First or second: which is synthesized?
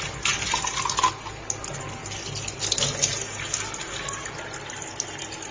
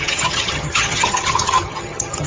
second